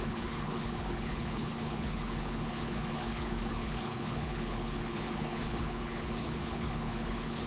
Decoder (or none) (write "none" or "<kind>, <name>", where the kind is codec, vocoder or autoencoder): codec, HILCodec